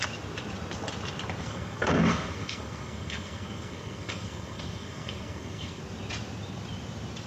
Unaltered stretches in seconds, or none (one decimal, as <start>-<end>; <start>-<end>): 0.0-1.4; 5.8-7.3